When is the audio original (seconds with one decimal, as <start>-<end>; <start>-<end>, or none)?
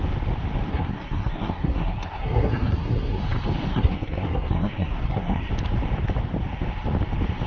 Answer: 0.0-0.7; 3.2-3.7; 5.5-7.5